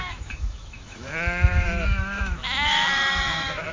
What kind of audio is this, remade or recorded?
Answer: remade